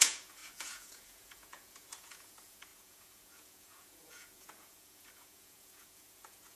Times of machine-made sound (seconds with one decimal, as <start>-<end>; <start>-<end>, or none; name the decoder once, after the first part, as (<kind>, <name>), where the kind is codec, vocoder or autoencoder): 0.0-6.6 (vocoder, Vocos)